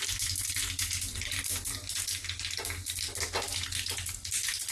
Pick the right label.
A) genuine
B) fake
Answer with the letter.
A